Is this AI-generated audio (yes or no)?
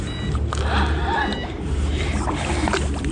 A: no